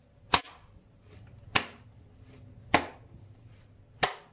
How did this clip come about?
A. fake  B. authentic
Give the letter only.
B